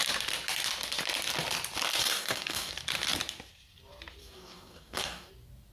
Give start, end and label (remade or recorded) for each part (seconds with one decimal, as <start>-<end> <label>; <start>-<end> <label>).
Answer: 0.0-2.0 recorded; 2.0-2.7 remade; 2.7-4.2 recorded; 4.2-5.3 remade; 5.3-5.7 recorded